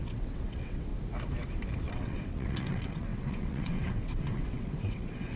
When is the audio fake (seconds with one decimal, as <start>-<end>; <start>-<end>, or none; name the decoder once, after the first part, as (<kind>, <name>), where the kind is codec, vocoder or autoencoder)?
0.0-0.9 (vocoder, WaveNeXt); 1.9-5.4

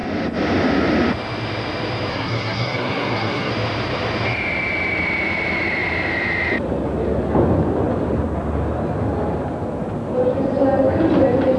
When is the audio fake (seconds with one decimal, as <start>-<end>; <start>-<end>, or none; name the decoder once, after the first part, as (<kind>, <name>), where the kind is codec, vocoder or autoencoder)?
2.1-3.5 (codec, SNAC)

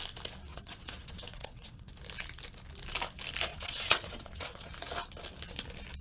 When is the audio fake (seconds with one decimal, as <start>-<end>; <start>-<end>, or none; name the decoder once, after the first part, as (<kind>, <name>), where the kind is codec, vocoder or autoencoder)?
0.5-1.9 (vocoder, WaveNeXt); 3.5-4.7

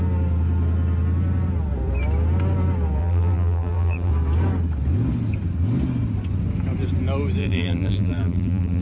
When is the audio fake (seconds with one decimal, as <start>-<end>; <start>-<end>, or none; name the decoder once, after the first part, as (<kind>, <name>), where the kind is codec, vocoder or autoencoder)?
3.0-4.1 (vocoder, BigVGAN v2); 7.4-8.8